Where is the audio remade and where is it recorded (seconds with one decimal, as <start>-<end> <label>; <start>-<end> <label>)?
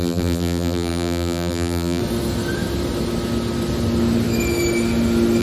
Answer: 0.0-2.0 remade; 2.0-5.4 recorded